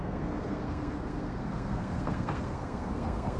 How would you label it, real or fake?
fake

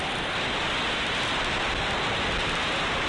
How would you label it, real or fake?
real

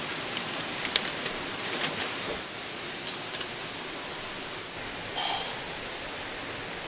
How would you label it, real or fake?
real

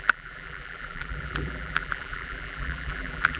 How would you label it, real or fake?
fake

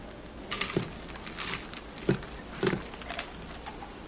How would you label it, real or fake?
real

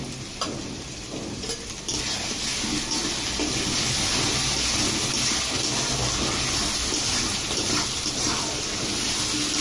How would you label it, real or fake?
real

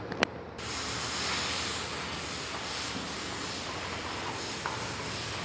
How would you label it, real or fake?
fake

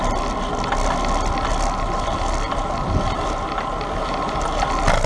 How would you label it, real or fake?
real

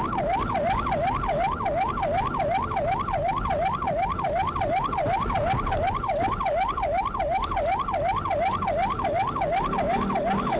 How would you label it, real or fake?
real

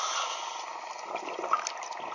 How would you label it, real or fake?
real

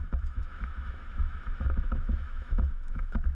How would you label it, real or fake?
fake